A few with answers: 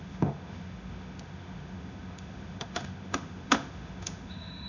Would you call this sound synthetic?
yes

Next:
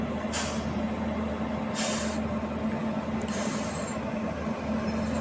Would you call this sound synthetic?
no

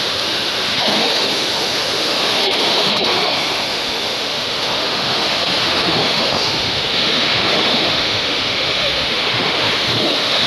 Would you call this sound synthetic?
yes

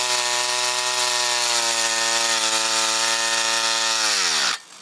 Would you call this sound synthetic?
no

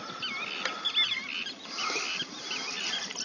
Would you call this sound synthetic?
no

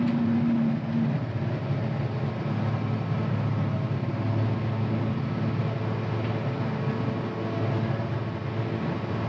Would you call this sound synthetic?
no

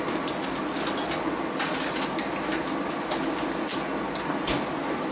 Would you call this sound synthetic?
no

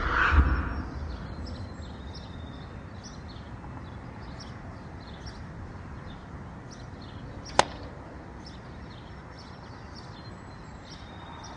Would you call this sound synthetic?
no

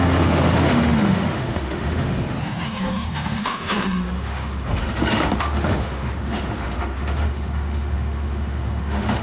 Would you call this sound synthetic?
yes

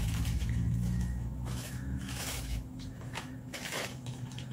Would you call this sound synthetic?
yes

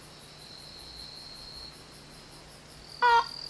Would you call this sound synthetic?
no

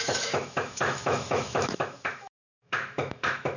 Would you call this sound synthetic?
yes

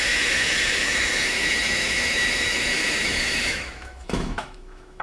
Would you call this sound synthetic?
yes